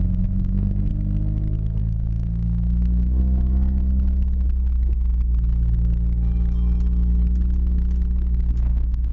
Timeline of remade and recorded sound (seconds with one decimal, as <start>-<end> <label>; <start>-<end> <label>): 0.0-0.9 remade; 0.9-1.8 recorded; 1.8-3.2 remade; 3.2-8.5 recorded; 8.5-9.1 remade